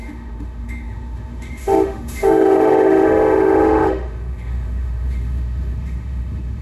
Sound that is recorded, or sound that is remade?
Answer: remade